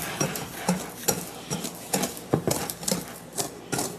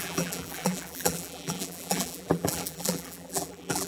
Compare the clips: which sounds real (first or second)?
first